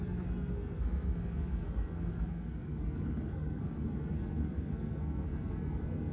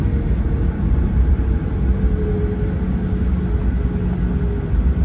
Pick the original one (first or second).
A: second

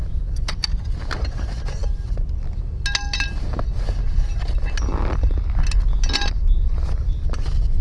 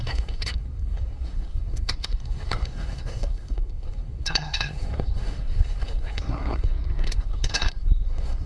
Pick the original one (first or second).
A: first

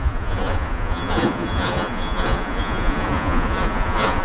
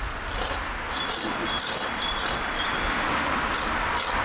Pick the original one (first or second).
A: second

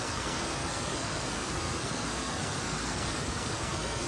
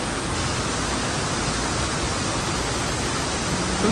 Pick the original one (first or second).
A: second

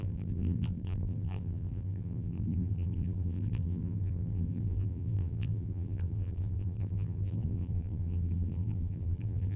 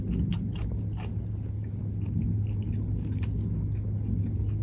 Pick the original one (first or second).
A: second